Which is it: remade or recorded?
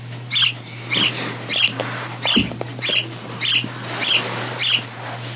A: recorded